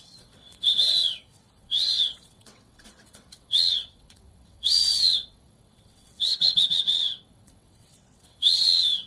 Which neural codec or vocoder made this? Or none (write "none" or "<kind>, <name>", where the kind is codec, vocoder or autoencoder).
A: vocoder, WaveNeXt